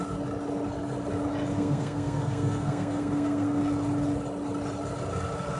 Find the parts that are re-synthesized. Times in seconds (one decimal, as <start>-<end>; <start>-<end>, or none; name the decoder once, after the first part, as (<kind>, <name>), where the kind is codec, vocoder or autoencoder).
1.5-3.6 (codec, SNAC)